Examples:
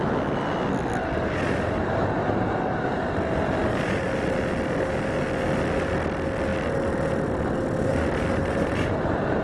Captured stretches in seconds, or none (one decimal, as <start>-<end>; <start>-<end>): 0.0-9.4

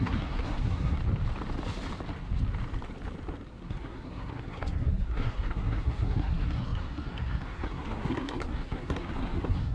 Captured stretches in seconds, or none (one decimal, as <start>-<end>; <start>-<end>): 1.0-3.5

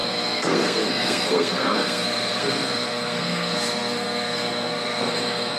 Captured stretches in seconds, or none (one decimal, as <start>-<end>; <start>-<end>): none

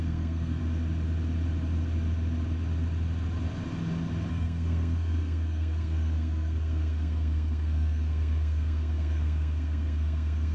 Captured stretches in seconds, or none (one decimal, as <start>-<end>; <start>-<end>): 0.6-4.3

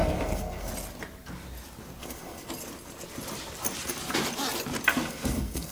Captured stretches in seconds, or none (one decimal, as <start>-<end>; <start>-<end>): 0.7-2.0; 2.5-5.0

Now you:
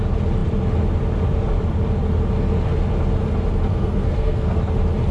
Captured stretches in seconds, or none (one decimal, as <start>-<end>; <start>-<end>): 0.0-3.7; 4.6-5.1

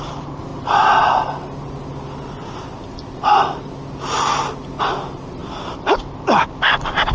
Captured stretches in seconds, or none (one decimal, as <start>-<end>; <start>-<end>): 0.0-7.1

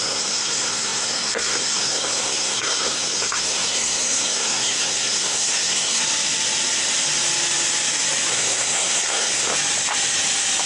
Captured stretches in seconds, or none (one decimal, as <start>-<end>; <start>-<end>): 6.0-8.3; 9.5-10.7